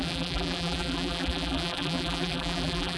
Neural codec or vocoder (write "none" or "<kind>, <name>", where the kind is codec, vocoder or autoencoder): vocoder, BigVGAN v2